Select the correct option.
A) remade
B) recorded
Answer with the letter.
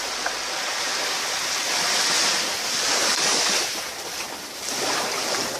A